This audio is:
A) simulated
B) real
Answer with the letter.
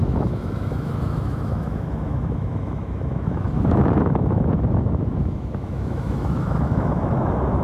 A